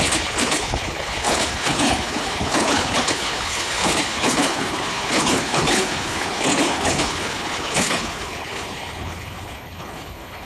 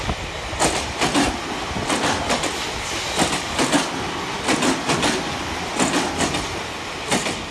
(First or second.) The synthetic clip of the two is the first